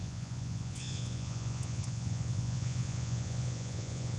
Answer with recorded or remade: remade